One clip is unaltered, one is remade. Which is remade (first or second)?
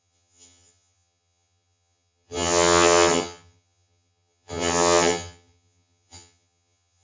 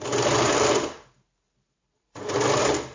first